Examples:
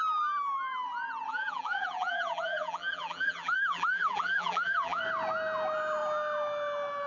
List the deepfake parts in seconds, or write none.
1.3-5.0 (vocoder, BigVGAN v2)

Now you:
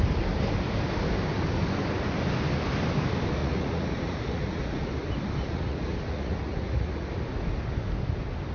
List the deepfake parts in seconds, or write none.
3.4-4.9 (vocoder, Vocos); 5.4-7.1